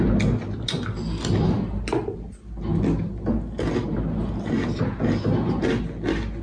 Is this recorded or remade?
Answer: recorded